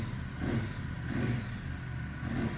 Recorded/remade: recorded